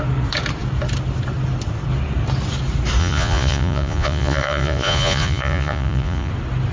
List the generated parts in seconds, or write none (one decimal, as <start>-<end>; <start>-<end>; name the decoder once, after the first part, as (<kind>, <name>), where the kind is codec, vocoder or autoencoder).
3.0-6.3 (vocoder, Vocos)